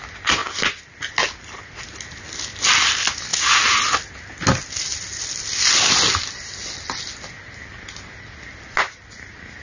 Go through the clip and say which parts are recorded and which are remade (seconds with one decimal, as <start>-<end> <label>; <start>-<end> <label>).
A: 0.0-9.6 recorded